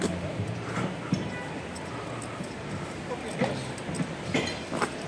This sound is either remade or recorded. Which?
recorded